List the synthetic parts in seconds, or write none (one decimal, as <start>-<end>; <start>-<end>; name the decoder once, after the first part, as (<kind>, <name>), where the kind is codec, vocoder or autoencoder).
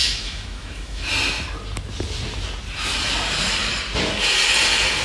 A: 0.0-1.1 (autoencoder, DAC-VAE)